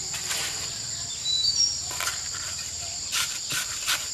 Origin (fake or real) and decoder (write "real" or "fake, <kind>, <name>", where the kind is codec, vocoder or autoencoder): fake, vocoder, BigVGAN v2